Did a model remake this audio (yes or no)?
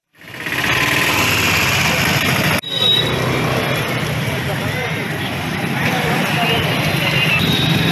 no